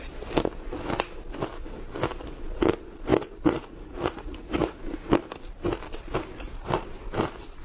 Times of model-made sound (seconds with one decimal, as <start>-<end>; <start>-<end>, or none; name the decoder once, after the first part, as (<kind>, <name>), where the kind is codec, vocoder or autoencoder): 3.1-4.8 (vocoder, Vocos)